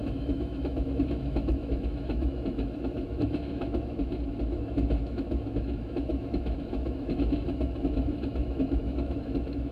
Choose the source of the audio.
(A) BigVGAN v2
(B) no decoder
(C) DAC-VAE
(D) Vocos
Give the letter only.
C